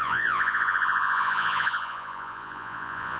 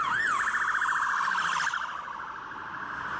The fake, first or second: first